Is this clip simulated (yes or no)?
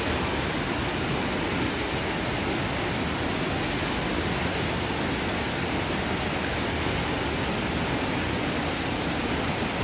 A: no